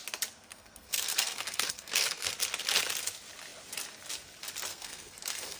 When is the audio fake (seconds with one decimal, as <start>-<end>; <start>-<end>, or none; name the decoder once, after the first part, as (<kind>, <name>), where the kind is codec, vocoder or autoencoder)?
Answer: 0.5-2.3 (codec, SNAC); 4.7-5.6